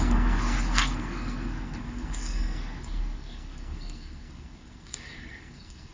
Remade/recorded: remade